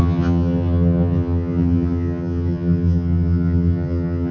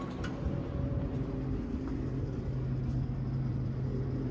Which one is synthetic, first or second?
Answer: first